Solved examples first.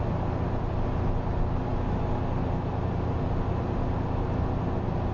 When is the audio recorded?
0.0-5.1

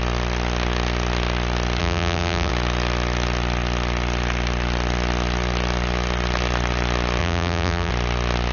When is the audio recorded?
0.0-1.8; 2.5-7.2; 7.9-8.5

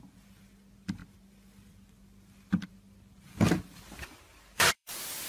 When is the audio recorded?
none

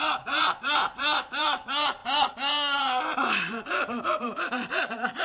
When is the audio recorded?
none

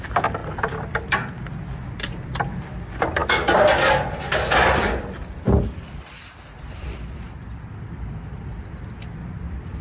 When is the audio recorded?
0.4-1.3

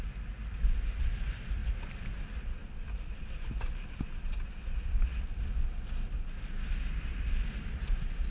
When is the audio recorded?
0.0-1.6; 2.6-8.3

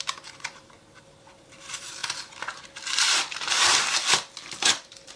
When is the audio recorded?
2.0-2.6

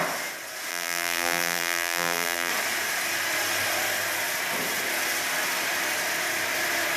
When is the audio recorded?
0.0-0.7; 2.5-7.0